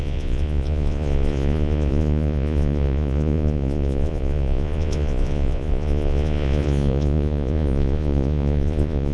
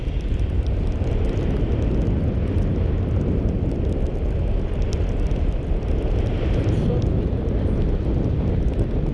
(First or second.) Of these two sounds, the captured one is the second